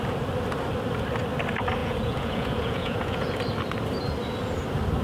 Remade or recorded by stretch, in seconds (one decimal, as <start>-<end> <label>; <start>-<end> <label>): 0.0-1.8 recorded; 1.8-3.4 remade; 3.4-5.0 recorded